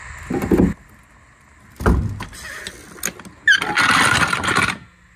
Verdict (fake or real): real